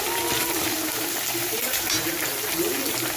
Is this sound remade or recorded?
recorded